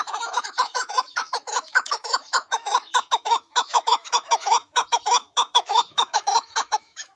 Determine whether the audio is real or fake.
fake